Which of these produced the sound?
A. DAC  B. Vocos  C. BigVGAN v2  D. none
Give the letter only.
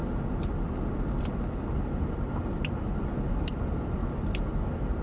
D